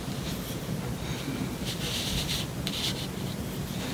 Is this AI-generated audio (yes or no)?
no